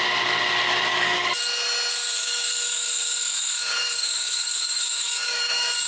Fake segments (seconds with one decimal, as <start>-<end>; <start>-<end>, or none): 0.9-1.4; 2.2-5.9